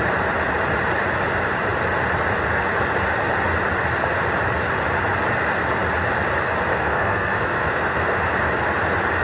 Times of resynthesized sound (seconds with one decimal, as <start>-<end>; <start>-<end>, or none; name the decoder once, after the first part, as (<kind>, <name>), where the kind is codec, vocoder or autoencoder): 6.7-8.2 (codec, SNAC)